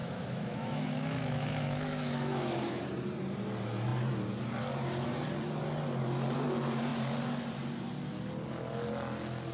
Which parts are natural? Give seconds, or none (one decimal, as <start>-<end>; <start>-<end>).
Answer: 2.8-9.5